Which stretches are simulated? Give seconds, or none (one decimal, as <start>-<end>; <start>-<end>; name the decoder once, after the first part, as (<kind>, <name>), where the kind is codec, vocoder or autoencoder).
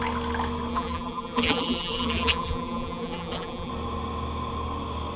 0.7-3.7 (vocoder, BigVGAN v2)